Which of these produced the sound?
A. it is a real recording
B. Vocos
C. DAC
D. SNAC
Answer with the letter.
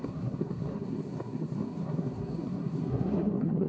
D